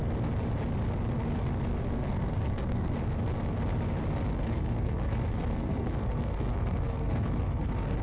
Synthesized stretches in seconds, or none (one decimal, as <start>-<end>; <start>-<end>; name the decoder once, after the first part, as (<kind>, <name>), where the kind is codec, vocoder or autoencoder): 1.9-2.9 (codec, SNAC); 4.3-8.0